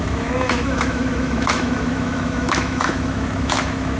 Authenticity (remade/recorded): remade